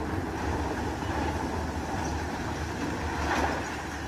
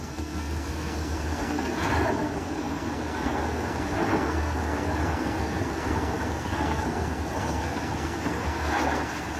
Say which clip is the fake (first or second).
second